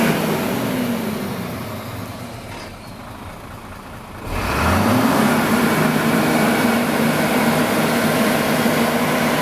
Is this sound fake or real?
real